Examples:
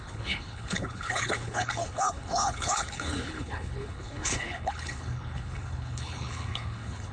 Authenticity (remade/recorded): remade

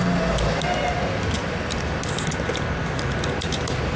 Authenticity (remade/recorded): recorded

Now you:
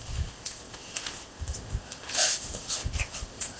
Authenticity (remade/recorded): remade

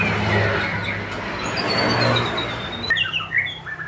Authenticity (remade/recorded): recorded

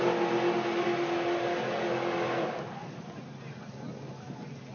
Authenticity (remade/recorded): recorded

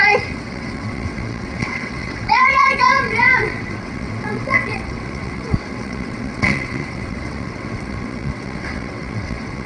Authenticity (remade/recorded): remade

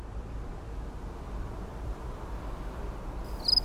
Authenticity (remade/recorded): recorded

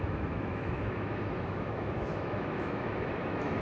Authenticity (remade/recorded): remade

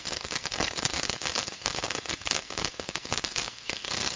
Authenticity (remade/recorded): remade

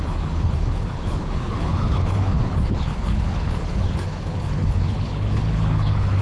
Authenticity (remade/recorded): remade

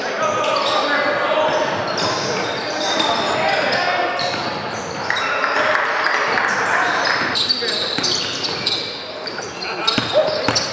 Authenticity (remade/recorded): recorded